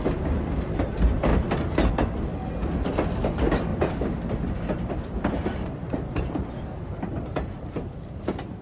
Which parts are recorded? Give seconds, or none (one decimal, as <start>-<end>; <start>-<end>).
1.3-1.9; 2.3-3.3; 3.7-5.1